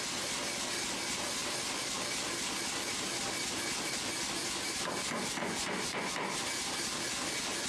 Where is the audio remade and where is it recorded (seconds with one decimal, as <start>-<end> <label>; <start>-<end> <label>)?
0.0-5.4 recorded; 5.4-6.1 remade; 6.1-7.7 recorded